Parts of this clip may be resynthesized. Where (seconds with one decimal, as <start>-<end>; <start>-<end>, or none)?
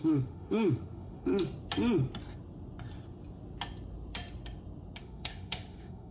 0.0-1.3; 5.0-6.1